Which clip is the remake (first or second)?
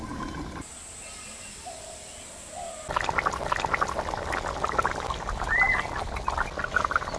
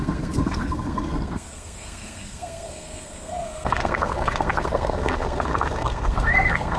second